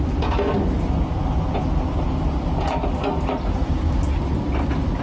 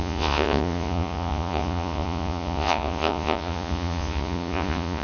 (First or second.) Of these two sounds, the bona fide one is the first